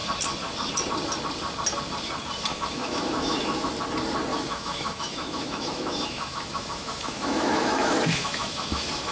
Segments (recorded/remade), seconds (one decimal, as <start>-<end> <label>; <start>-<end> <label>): 0.0-2.5 recorded; 2.5-3.7 remade; 3.7-4.3 recorded; 4.3-9.1 remade